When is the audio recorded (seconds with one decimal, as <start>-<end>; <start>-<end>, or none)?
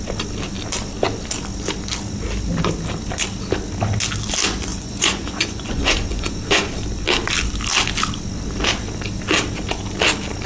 0.0-4.7; 6.7-10.5